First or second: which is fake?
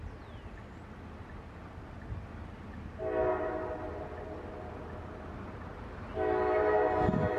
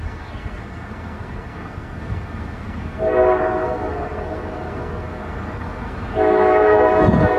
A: second